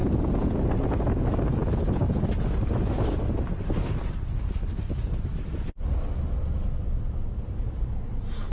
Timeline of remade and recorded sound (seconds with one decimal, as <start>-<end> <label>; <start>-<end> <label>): 0.0-0.7 remade; 0.7-8.5 recorded